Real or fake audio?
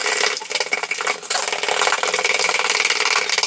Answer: real